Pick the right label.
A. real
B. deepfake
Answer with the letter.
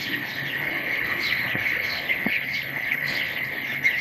B